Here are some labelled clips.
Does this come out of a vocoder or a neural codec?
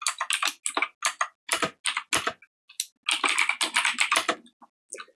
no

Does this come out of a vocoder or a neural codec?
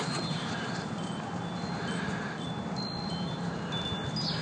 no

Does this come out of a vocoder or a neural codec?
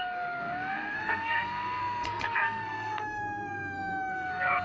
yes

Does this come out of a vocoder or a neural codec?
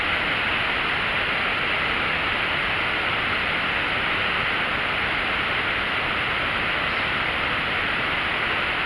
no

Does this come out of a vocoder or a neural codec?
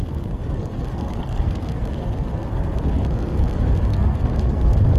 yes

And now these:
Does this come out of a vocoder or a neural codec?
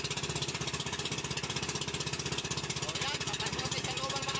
no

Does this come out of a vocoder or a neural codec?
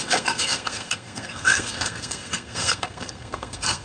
yes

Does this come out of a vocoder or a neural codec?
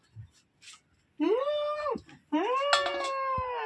no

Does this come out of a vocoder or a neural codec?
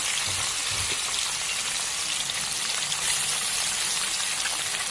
no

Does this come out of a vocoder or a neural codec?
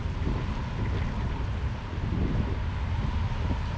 no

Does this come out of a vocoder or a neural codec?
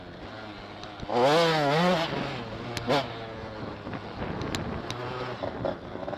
no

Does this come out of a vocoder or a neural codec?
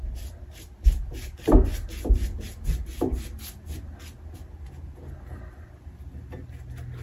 no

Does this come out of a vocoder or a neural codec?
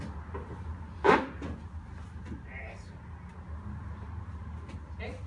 no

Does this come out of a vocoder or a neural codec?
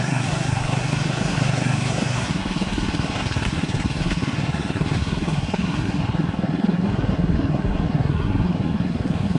yes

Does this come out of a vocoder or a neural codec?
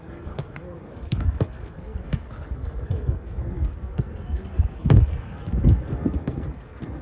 yes